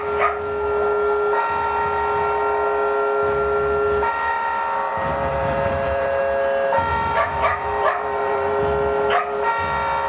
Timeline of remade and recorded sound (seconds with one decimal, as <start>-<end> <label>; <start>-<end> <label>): 0.0-4.9 recorded; 4.9-6.2 remade; 6.2-6.9 recorded; 6.9-8.6 remade; 8.6-10.1 recorded